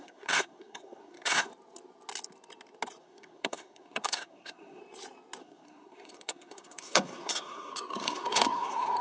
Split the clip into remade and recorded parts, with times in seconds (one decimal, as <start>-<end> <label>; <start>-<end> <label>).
0.0-1.5 remade; 1.5-3.0 recorded; 3.0-4.8 remade; 4.8-5.4 recorded; 5.4-9.0 remade